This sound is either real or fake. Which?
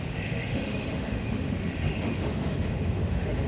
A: fake